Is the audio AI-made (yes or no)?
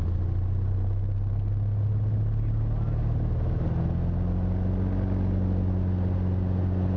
no